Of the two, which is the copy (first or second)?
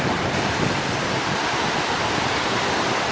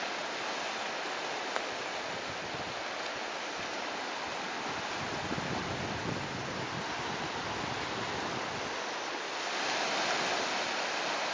first